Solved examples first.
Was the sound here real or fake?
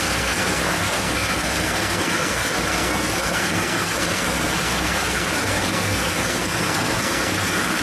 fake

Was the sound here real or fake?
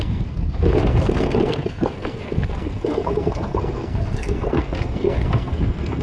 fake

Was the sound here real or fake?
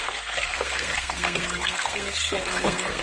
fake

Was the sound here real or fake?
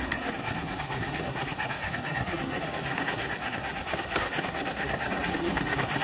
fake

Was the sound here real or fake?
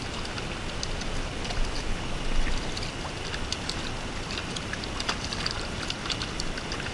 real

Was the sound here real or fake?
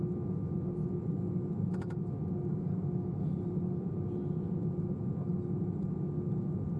real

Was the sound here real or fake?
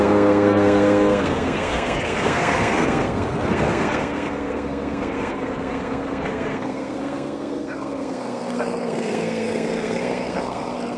fake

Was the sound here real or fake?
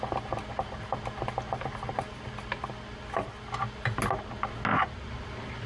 real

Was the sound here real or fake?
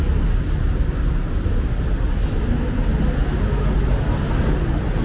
real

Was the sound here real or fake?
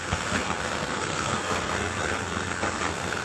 fake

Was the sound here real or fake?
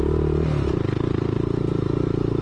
real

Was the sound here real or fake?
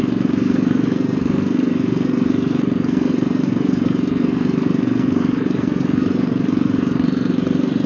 fake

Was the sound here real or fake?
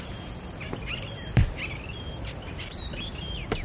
real